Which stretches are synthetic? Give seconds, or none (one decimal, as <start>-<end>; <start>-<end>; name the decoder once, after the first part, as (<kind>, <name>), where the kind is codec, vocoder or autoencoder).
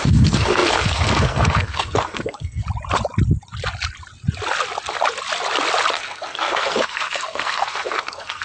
0.0-2.6 (codec, SNAC); 5.9-8.4